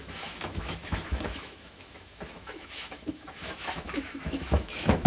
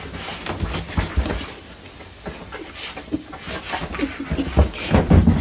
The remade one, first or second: first